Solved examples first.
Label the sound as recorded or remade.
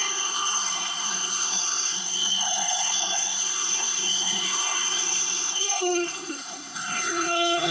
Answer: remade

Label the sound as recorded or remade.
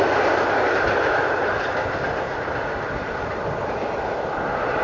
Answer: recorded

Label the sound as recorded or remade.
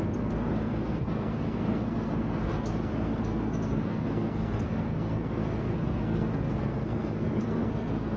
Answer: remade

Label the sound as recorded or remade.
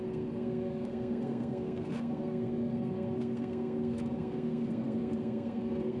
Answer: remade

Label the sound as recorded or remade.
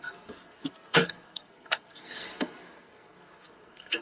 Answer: remade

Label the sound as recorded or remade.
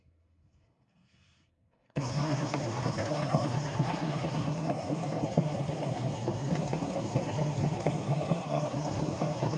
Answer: remade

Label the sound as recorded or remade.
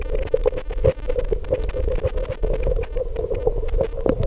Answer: recorded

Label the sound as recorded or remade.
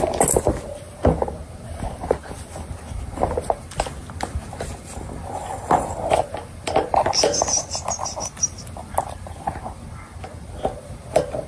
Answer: recorded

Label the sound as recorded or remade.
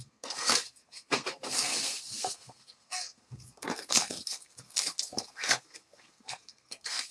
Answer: remade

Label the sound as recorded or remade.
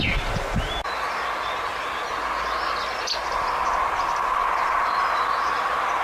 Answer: recorded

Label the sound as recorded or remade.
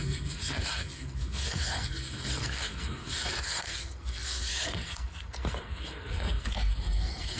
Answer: remade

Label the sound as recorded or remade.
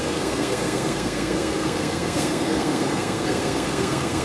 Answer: remade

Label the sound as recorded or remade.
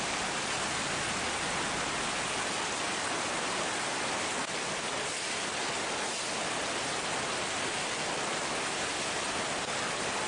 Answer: recorded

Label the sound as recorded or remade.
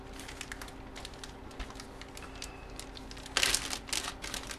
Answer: recorded